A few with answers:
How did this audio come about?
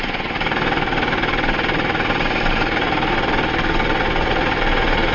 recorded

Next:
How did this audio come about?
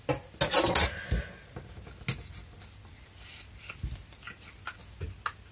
recorded